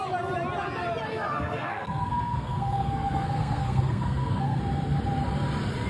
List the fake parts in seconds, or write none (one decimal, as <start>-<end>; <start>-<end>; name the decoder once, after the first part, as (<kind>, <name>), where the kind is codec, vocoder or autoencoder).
1.1-4.6 (codec, SNAC)